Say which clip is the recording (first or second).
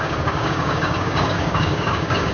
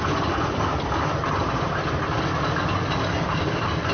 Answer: second